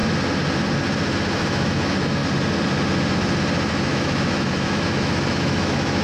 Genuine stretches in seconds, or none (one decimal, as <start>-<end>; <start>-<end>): 0.0-1.4; 2.2-3.7